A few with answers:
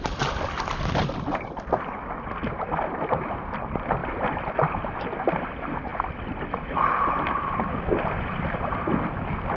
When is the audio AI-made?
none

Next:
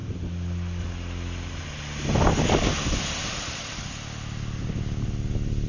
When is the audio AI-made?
none

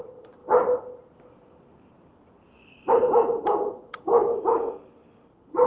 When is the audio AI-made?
none

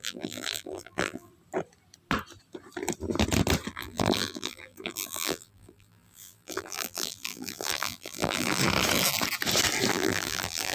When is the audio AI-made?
0.0-1.3 (vocoder, BigVGAN v2); 3.7-8.6; 9.9-10.7

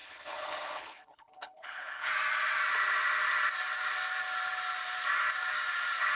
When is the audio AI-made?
0.0-2.1 (codec, HILCodec)

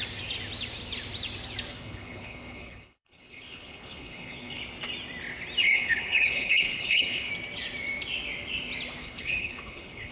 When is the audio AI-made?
1.7-4.6 (codec, HILCodec); 5.6-7.3; 9.0-10.1

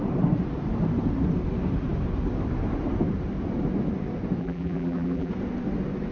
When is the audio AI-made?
4.4-5.3 (vocoder, BigVGAN v2)